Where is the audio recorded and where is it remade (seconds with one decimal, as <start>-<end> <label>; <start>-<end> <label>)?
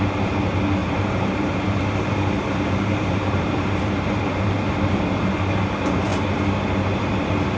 0.0-0.8 recorded; 0.8-5.4 remade; 5.4-7.6 recorded